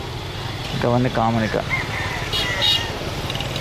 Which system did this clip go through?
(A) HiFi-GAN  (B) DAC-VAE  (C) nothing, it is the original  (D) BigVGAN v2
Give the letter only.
C